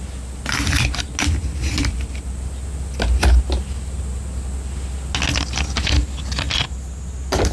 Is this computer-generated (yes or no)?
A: no